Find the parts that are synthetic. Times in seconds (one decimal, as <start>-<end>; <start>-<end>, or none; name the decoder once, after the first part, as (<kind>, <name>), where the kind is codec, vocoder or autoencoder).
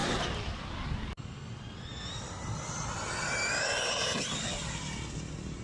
none